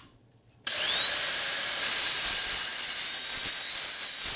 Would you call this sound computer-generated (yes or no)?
no